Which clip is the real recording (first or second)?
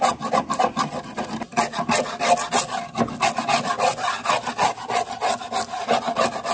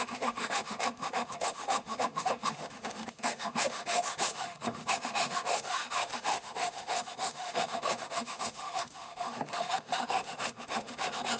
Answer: first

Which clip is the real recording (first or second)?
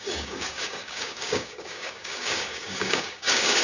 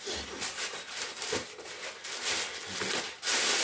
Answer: second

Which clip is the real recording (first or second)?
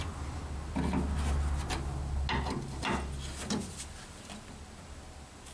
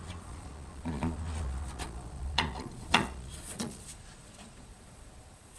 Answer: first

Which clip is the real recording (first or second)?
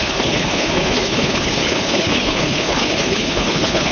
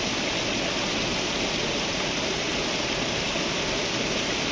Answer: second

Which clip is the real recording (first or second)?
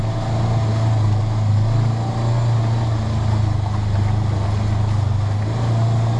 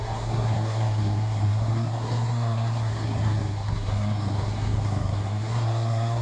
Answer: first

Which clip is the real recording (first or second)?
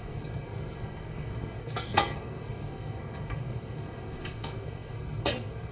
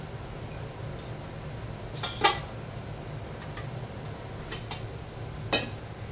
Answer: second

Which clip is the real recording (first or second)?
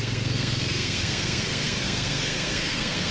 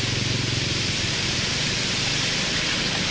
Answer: second